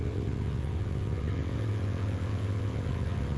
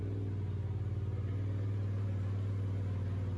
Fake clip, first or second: first